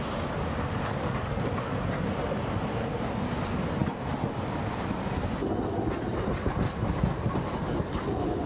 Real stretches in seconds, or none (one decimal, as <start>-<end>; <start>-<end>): 0.0-0.9; 1.4-8.5